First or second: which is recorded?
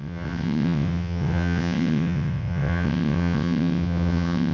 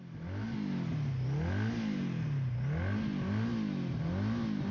second